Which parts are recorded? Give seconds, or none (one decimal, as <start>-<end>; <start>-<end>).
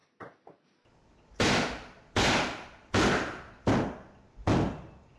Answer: 0.0-5.2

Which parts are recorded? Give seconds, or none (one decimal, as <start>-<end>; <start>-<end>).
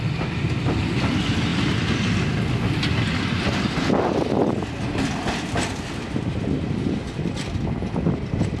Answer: 0.0-8.6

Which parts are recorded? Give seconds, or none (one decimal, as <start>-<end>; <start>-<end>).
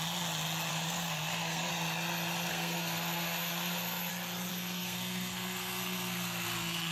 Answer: 0.0-0.7; 1.7-2.5; 4.1-4.5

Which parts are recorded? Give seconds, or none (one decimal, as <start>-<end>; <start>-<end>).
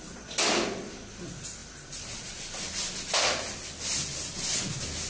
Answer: 0.0-5.1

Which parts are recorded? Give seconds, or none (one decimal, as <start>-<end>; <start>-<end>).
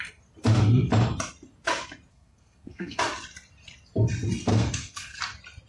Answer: 0.0-2.1; 3.0-4.5; 5.2-5.7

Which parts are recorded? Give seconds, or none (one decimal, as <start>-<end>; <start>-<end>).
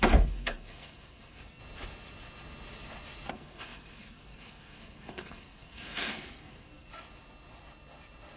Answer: 1.6-3.3; 6.9-8.4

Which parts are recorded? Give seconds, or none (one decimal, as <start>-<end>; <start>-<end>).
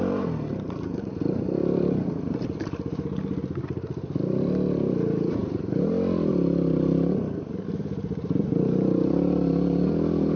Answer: 0.0-10.4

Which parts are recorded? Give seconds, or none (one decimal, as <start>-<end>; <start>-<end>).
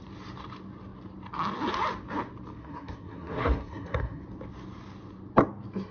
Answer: 0.0-2.6; 4.2-5.9